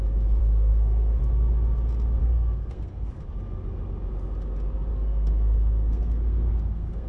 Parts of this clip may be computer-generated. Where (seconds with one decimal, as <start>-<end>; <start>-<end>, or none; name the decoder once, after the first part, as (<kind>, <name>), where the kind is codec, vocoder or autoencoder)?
0.4-1.2 (codec, SNAC); 2.2-3.2; 4.9-7.1